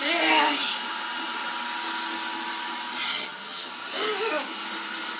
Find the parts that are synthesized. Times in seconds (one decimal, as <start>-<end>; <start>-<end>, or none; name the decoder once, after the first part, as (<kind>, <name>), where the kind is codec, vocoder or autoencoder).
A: 3.1-3.7 (vocoder, HiFi-GAN)